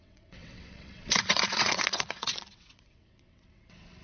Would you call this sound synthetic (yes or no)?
yes